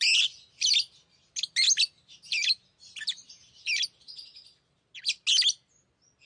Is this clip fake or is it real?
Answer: real